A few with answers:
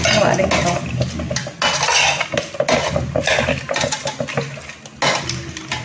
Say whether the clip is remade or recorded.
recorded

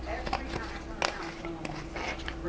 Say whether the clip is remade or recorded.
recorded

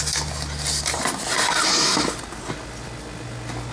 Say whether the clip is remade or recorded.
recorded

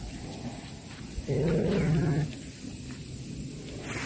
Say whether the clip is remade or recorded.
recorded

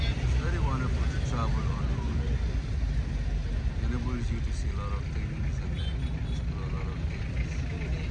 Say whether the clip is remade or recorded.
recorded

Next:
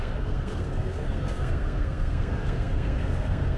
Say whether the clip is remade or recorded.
remade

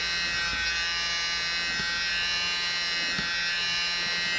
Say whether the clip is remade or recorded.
recorded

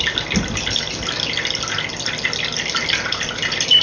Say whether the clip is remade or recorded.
recorded